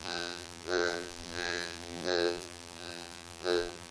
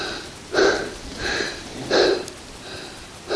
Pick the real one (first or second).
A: second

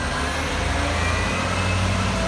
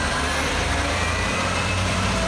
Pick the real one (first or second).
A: first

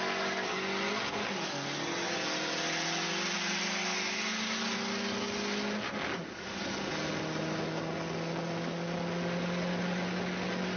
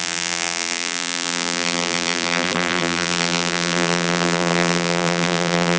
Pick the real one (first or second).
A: first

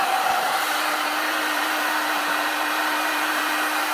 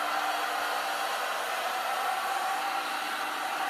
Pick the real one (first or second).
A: second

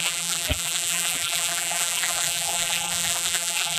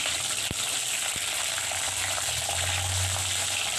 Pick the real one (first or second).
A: second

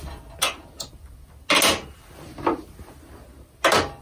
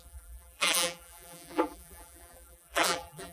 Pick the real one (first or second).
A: first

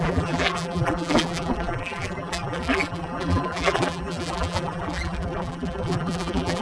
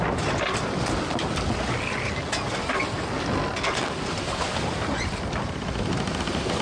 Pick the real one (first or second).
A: second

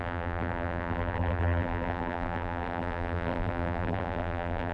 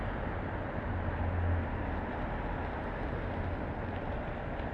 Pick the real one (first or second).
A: second